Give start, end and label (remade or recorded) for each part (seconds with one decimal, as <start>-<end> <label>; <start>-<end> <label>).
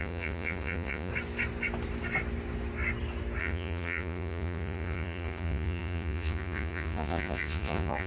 0.0-1.1 remade; 1.1-3.4 recorded; 3.4-8.1 remade